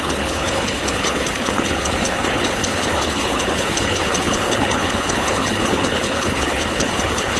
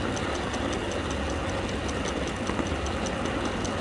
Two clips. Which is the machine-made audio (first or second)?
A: first